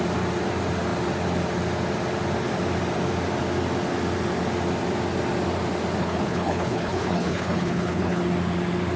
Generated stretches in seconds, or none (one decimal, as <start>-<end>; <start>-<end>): 6.0-8.2